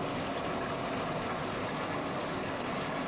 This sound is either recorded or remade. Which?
recorded